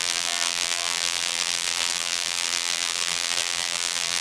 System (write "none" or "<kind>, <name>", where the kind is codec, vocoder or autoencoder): vocoder, BigVGAN v2